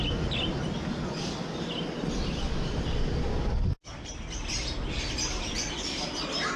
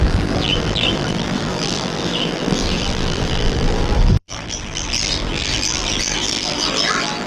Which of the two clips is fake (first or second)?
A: second